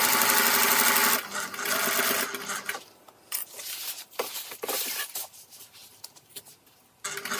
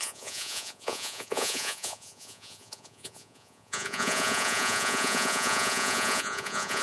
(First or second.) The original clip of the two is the first